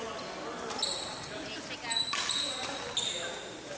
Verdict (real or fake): real